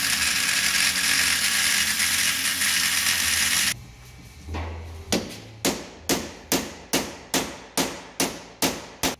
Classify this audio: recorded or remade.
recorded